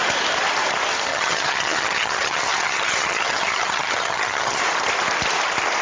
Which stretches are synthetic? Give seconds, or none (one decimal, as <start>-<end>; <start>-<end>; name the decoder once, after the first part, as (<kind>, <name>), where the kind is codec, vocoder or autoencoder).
1.1-4.6 (vocoder, HiFi-GAN)